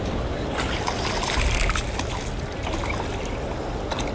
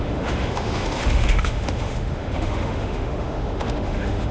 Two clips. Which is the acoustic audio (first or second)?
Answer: first